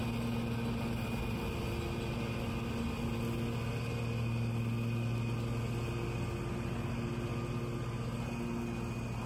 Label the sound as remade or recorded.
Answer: recorded